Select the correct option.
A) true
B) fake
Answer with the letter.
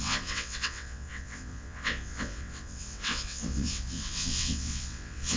B